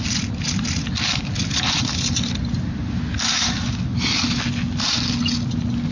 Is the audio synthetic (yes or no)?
no